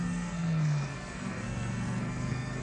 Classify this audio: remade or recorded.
remade